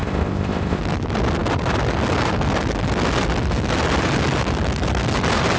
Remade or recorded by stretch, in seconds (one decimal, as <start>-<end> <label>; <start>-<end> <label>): 0.0-0.8 remade; 0.8-5.6 recorded